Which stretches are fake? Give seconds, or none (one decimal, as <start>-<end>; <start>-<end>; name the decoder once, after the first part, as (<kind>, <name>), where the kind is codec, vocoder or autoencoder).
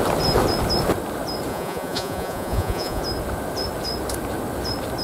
1.5-3.0 (vocoder, Vocos)